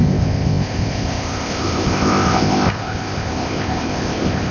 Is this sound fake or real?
fake